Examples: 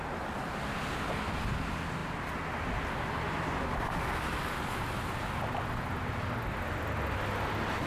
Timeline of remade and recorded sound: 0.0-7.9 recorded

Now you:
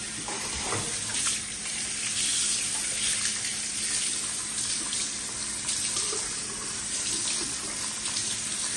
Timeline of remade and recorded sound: 0.0-8.8 recorded

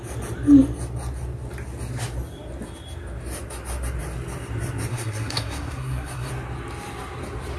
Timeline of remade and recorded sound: 0.0-4.9 recorded; 4.9-6.3 remade; 6.3-7.6 recorded

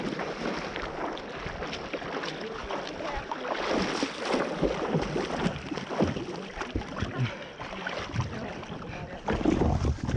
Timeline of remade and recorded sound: 0.0-10.2 recorded